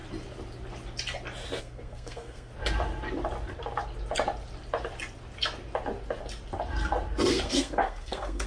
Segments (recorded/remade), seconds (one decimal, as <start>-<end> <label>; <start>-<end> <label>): 0.0-1.6 recorded; 1.6-2.5 remade; 2.5-7.3 recorded; 7.3-8.5 remade